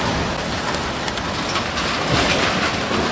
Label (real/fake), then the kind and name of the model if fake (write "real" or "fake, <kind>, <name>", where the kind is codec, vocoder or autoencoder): real